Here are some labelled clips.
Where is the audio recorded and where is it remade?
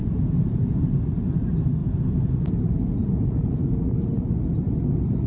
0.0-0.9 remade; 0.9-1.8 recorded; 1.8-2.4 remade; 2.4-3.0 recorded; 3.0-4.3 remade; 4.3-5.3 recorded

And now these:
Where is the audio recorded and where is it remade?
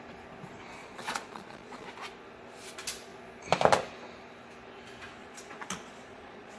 0.0-0.8 recorded; 0.8-1.9 remade; 1.9-5.2 recorded; 5.2-6.6 remade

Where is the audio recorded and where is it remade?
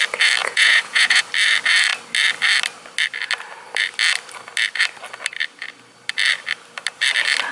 0.0-0.4 recorded; 0.4-1.2 remade; 1.2-7.5 recorded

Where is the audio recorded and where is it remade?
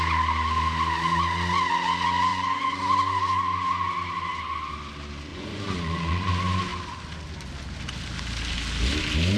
0.0-2.3 recorded; 2.3-2.8 remade; 2.8-5.3 recorded; 5.3-6.3 remade; 6.3-9.4 recorded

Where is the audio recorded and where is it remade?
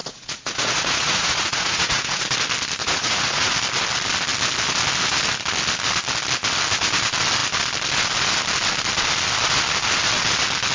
0.0-2.2 remade; 2.2-2.8 recorded; 2.8-3.5 remade; 3.5-10.7 recorded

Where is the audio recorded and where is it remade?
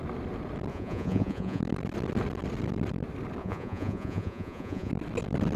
0.0-0.7 recorded; 0.7-1.6 remade; 1.6-3.4 recorded; 3.4-4.9 remade; 4.9-5.6 recorded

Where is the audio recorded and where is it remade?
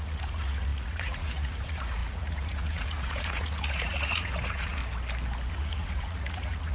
0.0-4.8 remade; 4.8-5.5 recorded; 5.5-6.7 remade